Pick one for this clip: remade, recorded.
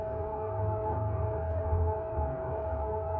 remade